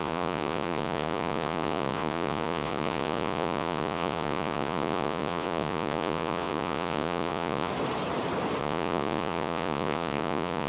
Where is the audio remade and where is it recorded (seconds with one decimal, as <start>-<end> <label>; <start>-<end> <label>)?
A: 0.0-7.7 remade; 7.7-8.6 recorded; 8.6-10.7 remade